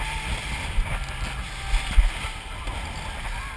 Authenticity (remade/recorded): recorded